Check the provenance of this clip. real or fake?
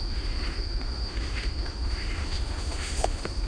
fake